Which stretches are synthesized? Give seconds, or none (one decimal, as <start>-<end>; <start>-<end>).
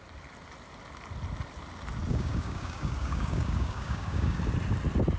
2.1-4.4